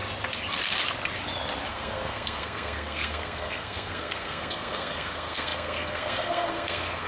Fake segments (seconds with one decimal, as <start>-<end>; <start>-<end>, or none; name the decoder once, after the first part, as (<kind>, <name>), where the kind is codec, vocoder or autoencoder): 1.7-7.1 (codec, SNAC)